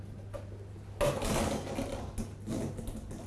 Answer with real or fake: real